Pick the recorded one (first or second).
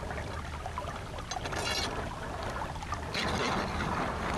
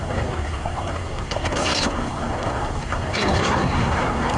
first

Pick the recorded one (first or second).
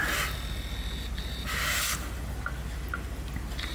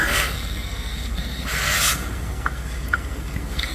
first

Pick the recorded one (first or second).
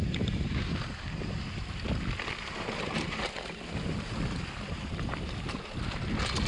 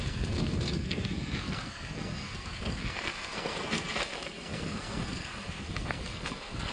first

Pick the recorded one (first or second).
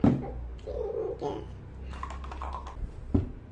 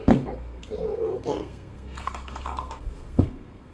first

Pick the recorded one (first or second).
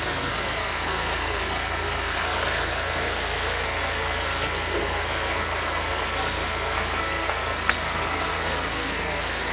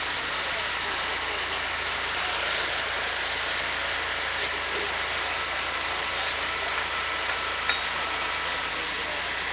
second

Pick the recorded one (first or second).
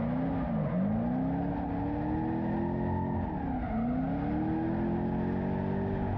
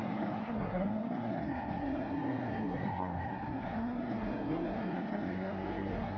first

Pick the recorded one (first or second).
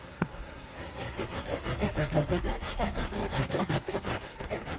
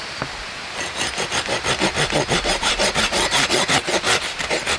second